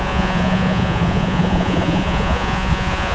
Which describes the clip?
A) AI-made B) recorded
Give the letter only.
A